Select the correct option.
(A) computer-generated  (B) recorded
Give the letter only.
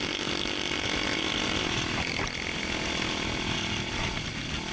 B